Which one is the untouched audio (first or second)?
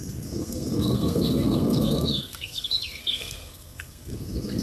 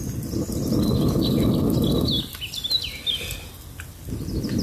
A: second